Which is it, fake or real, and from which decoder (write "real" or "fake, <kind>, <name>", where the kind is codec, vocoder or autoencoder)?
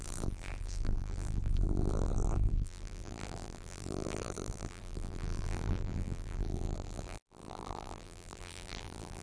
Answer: fake, vocoder, BigVGAN v2